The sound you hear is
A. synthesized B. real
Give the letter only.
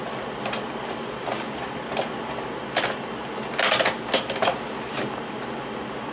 B